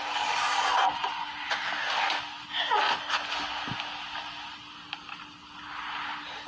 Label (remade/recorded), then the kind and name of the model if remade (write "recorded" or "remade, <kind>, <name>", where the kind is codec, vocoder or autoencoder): recorded